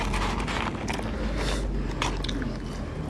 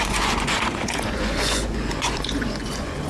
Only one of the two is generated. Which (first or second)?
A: second